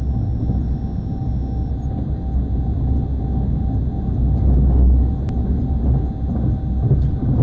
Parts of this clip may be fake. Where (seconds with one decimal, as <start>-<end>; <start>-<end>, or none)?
none